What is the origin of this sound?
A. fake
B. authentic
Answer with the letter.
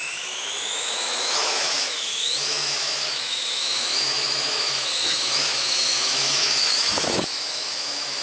A